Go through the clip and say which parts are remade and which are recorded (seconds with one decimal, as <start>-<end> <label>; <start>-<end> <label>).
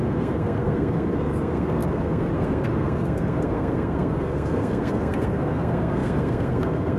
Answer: 0.0-7.0 remade